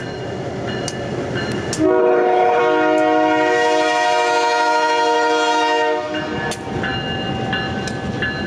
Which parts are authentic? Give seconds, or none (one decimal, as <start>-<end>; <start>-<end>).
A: 0.0-2.0; 2.6-8.5